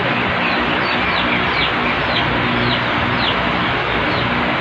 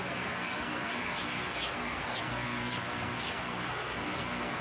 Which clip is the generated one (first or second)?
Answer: second